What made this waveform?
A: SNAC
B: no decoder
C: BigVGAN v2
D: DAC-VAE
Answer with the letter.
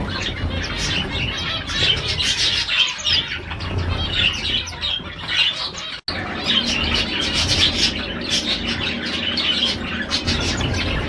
B